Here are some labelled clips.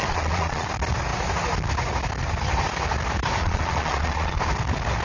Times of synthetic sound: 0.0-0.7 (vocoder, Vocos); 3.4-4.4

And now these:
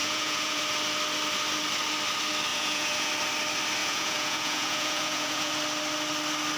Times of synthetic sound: 0.0-0.6 (vocoder, Vocos); 2.5-3.1; 3.8-5.5

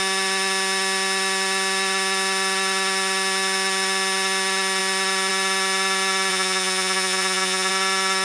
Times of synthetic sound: 6.3-7.7 (vocoder, Vocos)

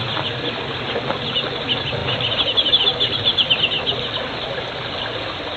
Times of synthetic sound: none

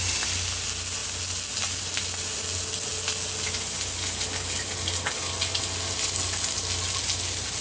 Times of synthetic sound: none